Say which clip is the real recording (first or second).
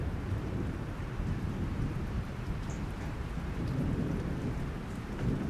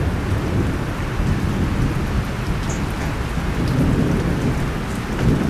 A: second